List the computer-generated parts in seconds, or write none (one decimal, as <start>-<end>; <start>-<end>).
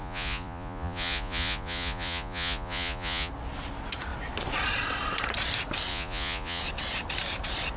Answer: 0.0-3.3; 5.9-6.6